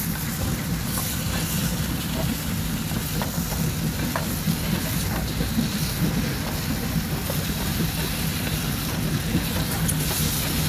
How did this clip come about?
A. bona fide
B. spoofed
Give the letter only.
A